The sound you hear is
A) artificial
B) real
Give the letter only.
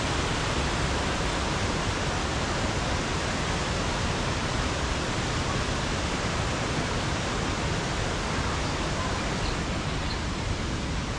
B